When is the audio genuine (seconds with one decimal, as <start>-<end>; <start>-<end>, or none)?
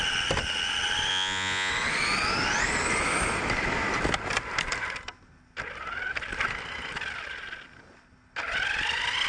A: 0.0-1.1; 1.7-9.3